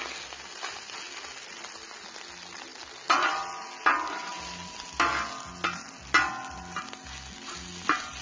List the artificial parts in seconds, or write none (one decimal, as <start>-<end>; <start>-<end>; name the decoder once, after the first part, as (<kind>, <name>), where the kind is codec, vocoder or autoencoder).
none